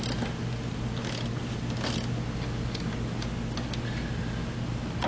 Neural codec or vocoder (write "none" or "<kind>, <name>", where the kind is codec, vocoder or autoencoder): none